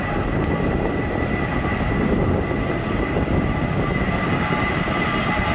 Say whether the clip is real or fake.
real